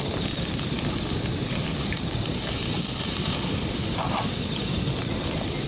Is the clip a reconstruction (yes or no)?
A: yes